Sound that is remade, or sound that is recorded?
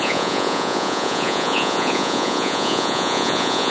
remade